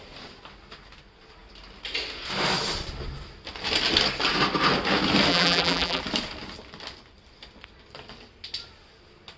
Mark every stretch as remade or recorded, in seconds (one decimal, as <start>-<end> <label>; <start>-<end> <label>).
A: 0.0-5.3 recorded; 5.3-6.0 remade; 6.0-9.4 recorded